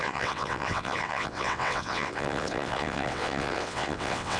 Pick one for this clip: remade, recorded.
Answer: remade